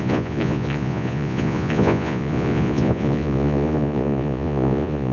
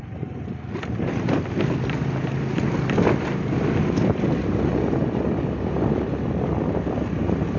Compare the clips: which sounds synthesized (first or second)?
first